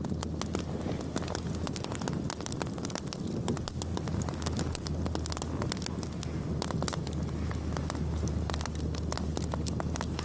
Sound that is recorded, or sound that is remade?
recorded